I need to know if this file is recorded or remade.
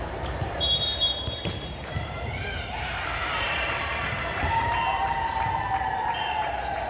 remade